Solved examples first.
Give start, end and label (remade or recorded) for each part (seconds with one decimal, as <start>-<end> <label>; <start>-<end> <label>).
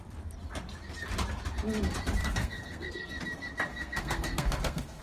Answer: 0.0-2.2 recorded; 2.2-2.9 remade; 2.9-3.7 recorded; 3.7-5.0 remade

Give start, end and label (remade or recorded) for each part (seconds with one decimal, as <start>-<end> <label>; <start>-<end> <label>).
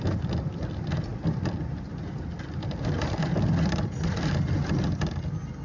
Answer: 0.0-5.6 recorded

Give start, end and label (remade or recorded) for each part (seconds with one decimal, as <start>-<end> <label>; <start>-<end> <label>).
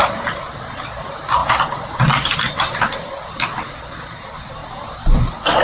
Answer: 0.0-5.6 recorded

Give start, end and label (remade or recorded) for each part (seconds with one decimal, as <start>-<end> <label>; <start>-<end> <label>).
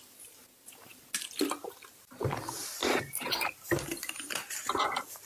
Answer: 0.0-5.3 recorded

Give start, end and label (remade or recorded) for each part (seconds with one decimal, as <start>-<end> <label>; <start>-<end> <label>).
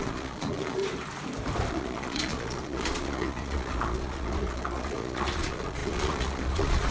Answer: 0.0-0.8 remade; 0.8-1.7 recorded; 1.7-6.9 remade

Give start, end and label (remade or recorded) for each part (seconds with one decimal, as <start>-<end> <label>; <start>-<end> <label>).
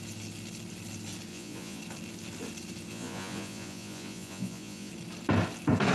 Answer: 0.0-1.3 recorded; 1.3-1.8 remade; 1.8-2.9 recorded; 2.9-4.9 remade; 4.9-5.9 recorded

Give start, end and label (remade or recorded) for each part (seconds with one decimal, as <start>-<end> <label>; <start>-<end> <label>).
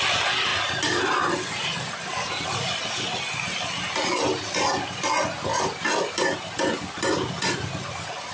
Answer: 0.0-8.3 recorded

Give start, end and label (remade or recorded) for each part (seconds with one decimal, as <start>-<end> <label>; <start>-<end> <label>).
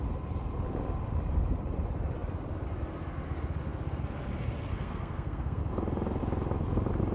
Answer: 0.0-4.7 recorded; 4.7-5.6 remade; 5.6-7.1 recorded